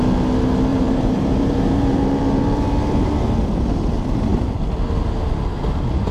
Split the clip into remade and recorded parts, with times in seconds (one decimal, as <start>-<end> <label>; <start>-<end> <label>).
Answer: 0.0-0.7 recorded; 0.7-3.1 remade; 3.1-6.1 recorded